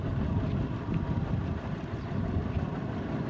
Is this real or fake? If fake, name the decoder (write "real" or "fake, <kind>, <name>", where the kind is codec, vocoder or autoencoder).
real